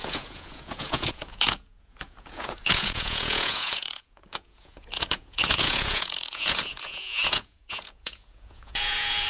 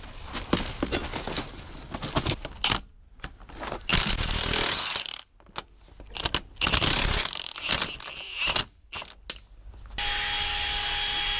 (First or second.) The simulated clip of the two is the first